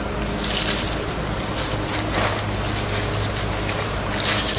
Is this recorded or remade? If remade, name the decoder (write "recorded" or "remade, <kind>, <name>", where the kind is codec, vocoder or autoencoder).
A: recorded